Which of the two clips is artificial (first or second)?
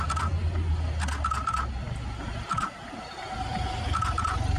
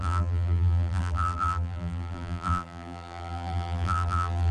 second